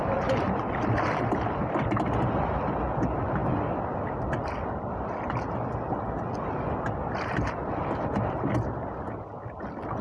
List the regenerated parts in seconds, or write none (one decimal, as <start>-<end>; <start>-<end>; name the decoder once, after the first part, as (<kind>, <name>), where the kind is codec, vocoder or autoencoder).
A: none